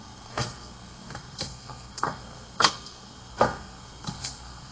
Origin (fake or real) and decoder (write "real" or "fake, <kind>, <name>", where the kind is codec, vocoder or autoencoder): fake, codec, SNAC